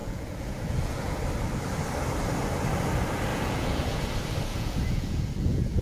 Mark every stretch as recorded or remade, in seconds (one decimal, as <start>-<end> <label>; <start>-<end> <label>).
0.0-1.2 remade; 1.2-3.3 recorded; 3.3-4.0 remade; 4.0-4.5 recorded; 4.5-5.8 remade